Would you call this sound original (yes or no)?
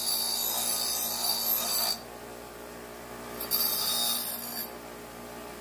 yes